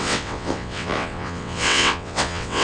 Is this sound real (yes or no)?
no